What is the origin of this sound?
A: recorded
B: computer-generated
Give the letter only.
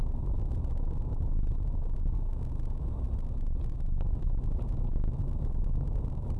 A